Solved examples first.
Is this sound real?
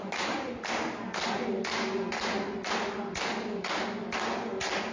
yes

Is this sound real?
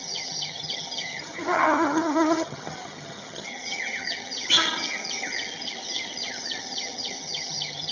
no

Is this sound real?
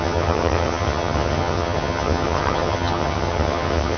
no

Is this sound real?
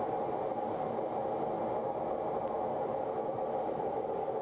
yes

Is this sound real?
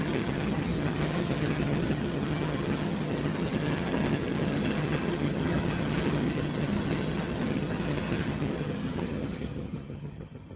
no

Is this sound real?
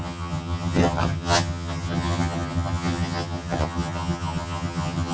no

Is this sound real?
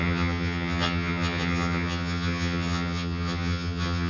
no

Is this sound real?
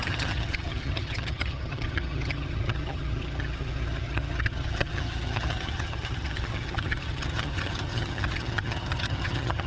no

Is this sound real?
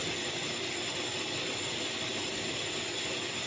yes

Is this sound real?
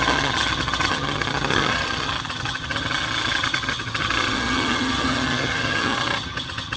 no